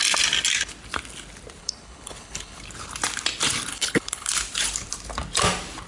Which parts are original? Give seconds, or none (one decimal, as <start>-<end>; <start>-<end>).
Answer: 0.0-1.6; 2.6-3.7; 4.3-5.9